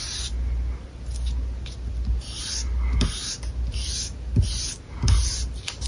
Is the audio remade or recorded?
recorded